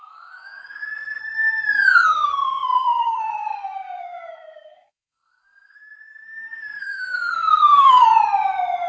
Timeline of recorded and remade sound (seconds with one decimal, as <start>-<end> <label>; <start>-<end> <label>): 0.0-1.2 remade; 1.2-1.9 recorded; 1.9-8.1 remade; 8.1-8.9 recorded